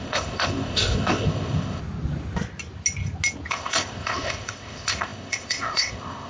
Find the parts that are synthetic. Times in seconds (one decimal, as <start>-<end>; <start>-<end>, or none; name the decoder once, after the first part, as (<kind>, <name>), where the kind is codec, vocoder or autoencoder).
0.0-1.8 (codec, ZipCodec); 3.5-6.3